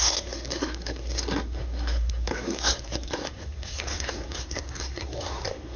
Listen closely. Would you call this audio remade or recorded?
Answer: remade